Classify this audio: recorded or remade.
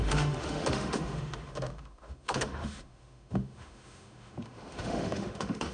remade